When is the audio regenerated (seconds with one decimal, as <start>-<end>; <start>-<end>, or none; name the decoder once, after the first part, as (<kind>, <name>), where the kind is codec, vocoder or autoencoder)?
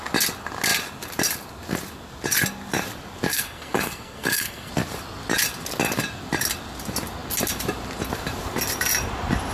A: 3.3-4.7 (codec, SNAC)